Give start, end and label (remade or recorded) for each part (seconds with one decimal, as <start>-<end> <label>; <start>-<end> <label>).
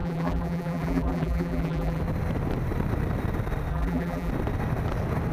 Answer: 0.0-2.0 remade; 2.0-3.7 recorded; 3.7-4.3 remade; 4.3-5.3 recorded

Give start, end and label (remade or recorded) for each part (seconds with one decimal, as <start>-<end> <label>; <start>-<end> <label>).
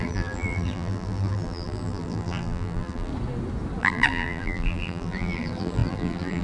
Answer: 0.0-3.1 remade; 3.1-3.8 recorded; 3.8-6.4 remade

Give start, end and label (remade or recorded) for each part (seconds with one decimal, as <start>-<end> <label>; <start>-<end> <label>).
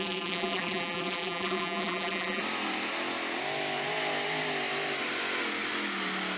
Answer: 0.0-2.4 remade; 2.4-6.4 recorded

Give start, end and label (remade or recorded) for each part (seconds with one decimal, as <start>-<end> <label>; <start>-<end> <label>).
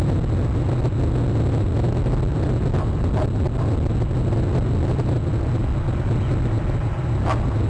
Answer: 0.0-7.7 recorded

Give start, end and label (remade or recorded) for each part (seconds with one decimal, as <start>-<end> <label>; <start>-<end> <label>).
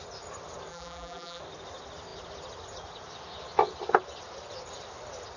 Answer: 0.0-0.7 recorded; 0.7-1.4 remade; 1.4-5.4 recorded